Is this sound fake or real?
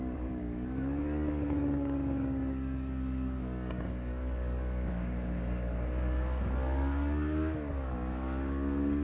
fake